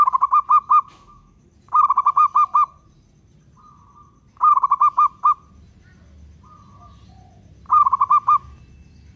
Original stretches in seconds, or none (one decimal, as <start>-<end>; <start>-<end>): 0.0-0.6; 1.4-9.2